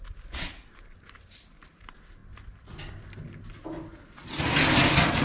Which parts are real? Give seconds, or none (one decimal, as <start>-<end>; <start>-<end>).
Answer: 0.0-5.2

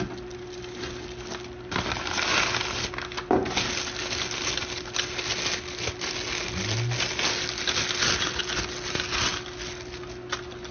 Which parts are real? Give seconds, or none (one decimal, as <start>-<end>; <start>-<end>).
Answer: 0.0-10.7

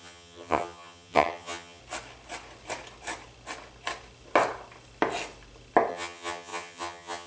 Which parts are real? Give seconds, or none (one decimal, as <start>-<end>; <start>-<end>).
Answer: 1.8-5.9

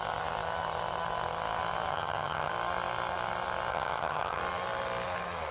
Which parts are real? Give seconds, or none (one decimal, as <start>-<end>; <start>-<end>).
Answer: 0.0-1.9; 2.5-3.7; 4.4-5.5